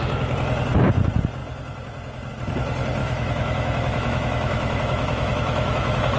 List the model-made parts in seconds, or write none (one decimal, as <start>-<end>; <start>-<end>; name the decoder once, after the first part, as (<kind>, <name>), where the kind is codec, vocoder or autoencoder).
3.0-6.2 (autoencoder, DAC-VAE)